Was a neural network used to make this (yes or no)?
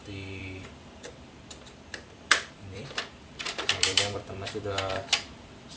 yes